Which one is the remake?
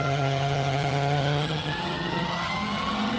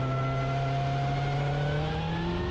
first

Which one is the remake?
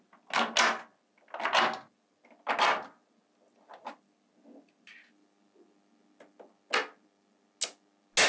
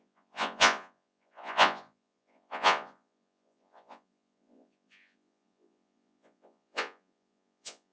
second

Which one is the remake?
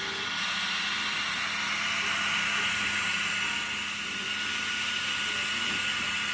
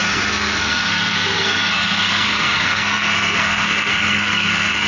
second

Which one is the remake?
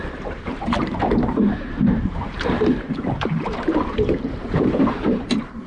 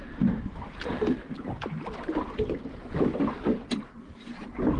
first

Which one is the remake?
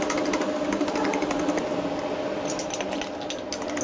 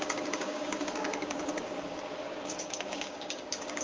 second